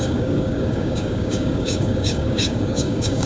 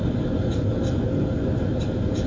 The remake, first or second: first